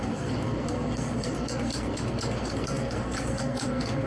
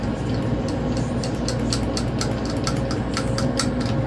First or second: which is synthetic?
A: first